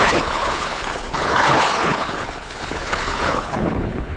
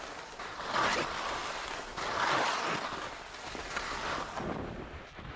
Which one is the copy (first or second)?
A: first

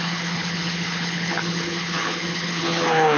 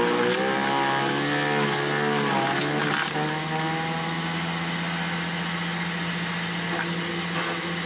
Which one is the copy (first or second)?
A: first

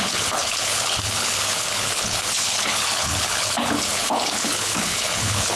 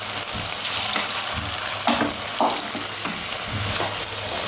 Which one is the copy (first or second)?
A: first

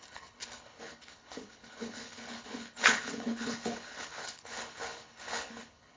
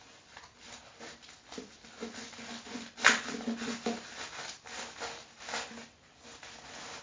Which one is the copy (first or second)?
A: first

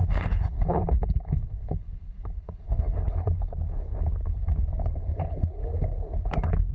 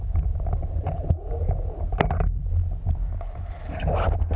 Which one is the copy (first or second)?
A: first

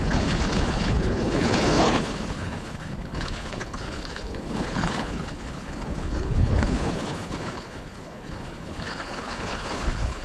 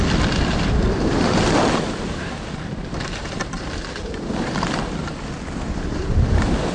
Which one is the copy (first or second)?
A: first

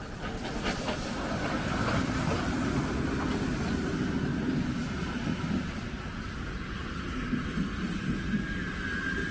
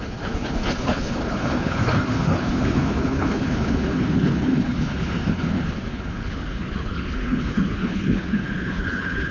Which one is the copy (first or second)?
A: second